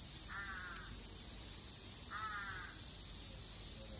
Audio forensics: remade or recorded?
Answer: recorded